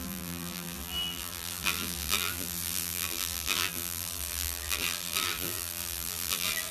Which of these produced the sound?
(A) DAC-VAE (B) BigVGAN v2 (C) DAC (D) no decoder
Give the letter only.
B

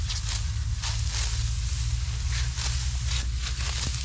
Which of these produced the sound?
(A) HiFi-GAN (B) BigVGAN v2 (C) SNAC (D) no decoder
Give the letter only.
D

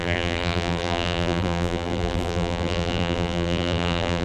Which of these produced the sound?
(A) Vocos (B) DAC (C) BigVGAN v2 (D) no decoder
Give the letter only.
C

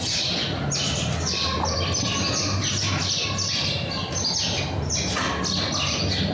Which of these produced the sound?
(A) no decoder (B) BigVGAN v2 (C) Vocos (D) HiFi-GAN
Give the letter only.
A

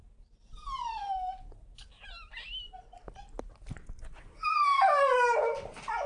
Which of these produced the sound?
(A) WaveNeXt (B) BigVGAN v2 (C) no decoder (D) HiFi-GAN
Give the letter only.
C